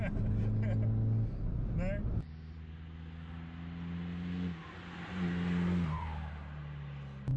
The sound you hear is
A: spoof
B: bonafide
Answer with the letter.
B